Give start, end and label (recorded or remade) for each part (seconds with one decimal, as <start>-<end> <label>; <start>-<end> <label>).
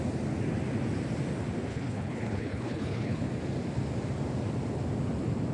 0.0-1.7 recorded; 1.7-3.3 remade; 3.3-5.5 recorded